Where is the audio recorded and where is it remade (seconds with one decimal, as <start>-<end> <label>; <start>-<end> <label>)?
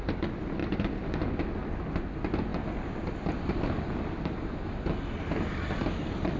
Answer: 0.0-6.4 recorded